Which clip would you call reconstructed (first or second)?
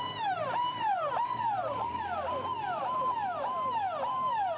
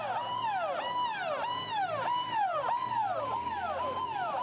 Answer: first